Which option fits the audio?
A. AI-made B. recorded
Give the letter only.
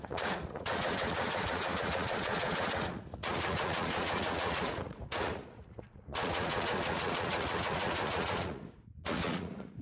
A